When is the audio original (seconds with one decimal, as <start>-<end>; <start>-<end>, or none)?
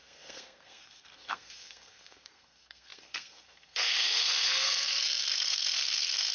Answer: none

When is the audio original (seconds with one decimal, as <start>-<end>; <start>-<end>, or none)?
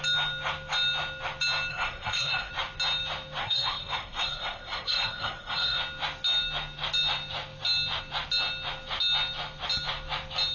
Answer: 0.0-1.7; 2.5-3.4; 5.8-10.5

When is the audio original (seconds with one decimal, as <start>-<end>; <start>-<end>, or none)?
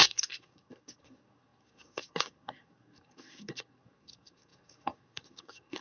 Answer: none